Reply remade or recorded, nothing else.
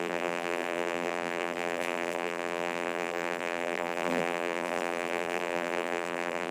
remade